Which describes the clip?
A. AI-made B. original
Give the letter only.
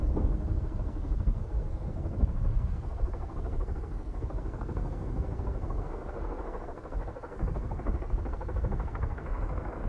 A